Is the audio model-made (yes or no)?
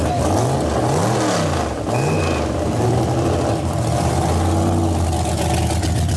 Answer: no